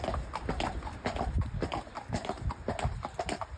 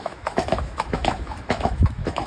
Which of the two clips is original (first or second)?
first